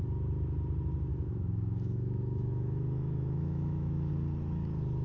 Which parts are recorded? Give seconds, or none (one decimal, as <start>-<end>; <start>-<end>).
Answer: 0.0-1.1; 4.1-5.0